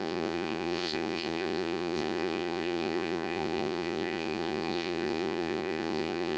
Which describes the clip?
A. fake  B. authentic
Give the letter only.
A